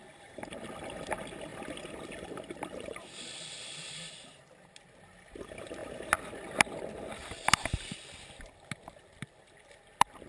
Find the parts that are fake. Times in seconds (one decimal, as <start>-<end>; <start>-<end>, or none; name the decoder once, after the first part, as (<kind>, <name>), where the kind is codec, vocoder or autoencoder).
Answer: 1.5-4.7 (vocoder, BigVGAN v2)